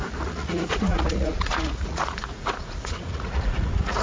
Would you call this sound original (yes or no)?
no